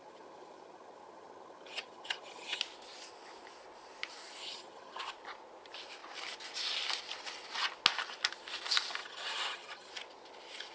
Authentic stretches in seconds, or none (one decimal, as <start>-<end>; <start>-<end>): 2.6-4.4; 5.0-9.0; 9.9-10.7